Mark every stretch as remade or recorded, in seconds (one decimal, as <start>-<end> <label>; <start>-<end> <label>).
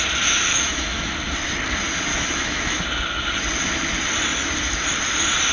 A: 0.0-0.5 recorded; 0.5-1.1 remade; 1.1-2.1 recorded; 2.1-2.8 remade; 2.8-5.5 recorded